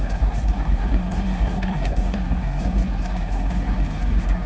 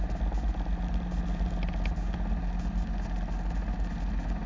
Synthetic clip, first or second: first